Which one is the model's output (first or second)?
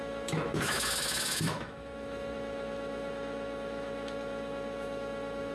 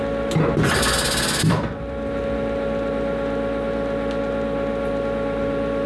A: first